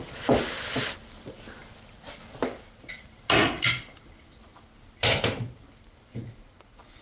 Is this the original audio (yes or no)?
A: yes